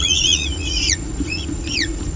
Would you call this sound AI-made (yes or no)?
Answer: yes